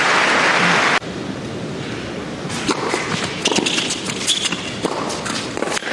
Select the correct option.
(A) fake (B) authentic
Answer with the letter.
B